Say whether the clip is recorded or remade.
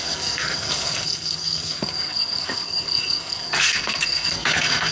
remade